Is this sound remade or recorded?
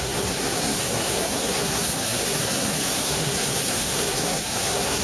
remade